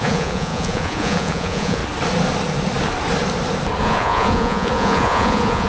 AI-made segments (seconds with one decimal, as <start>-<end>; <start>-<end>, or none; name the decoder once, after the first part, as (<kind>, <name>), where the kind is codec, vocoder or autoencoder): 0.0-1.8 (vocoder, Vocos); 3.8-5.7